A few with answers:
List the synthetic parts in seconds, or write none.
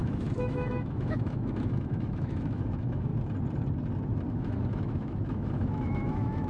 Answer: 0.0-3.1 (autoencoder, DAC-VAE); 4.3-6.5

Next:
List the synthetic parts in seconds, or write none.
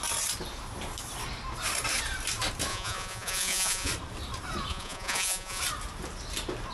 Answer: 2.7-3.9 (vocoder, Vocos); 4.7-5.6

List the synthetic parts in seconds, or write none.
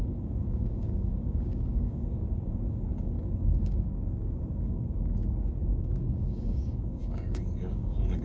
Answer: 0.0-8.2 (codec, DAC)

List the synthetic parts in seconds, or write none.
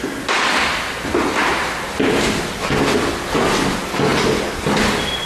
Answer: 1.4-2.4 (vocoder, BigVGAN v2)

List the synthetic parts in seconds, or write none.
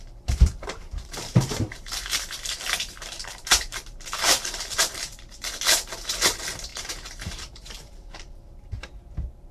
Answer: 0.0-9.5 (vocoder, BigVGAN v2)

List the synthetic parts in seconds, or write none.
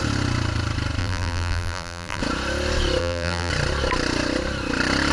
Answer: 1.0-2.2 (vocoder, BigVGAN v2); 3.0-3.5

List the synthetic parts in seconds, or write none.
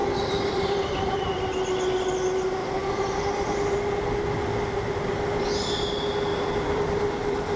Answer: 0.0-1.3 (vocoder, BigVGAN v2); 2.6-3.9; 6.3-7.6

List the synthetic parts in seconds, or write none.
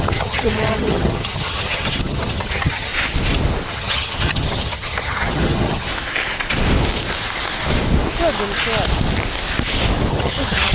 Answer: 0.0-2.9 (vocoder, HiFi-GAN); 3.7-5.9; 10.1-10.7